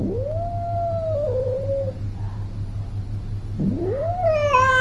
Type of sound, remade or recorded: recorded